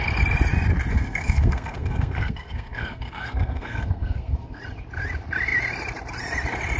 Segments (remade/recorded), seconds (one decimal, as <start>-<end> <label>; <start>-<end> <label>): 0.0-0.9 recorded; 0.9-4.6 remade; 4.6-6.8 recorded